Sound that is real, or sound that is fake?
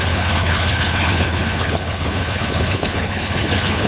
fake